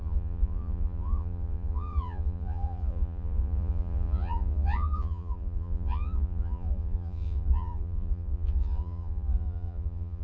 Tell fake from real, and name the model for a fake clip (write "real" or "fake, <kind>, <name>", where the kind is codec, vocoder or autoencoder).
fake, vocoder, Vocos